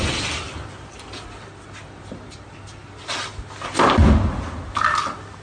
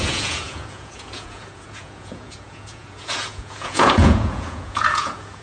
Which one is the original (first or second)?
first